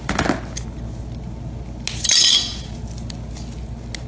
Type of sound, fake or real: real